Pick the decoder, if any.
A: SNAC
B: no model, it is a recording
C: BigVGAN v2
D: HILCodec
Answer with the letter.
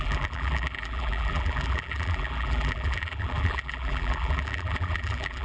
C